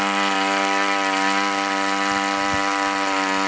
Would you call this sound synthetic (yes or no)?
no